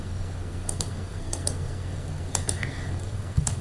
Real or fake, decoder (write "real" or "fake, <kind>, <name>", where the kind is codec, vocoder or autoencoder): fake, codec, SNAC